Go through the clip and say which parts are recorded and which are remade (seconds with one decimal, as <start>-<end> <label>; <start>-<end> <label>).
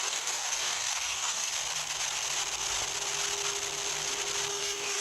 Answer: 0.0-1.5 remade; 1.5-4.5 recorded; 4.5-5.0 remade